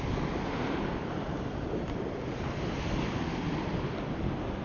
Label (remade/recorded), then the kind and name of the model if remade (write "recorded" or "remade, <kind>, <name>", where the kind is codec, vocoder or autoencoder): recorded